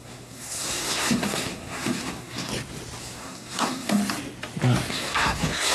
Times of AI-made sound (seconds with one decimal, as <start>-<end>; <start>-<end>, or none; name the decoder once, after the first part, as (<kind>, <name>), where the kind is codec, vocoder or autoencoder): 0.0-2.5 (codec, SNAC); 3.0-4.0; 4.9-5.7